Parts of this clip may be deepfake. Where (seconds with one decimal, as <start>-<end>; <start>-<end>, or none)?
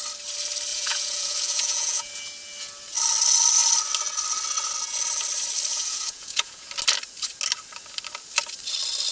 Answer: 0.7-2.1; 5.7-6.6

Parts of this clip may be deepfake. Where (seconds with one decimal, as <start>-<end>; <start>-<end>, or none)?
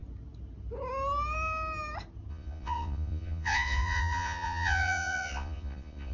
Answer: 2.3-6.1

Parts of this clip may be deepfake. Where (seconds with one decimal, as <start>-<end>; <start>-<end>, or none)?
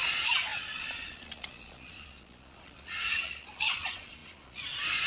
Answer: 0.0-5.1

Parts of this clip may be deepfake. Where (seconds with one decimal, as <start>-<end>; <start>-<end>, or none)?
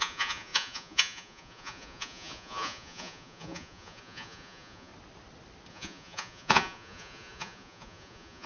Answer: 0.0-4.9; 5.7-8.5